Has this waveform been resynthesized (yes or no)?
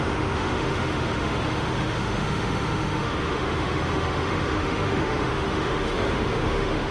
yes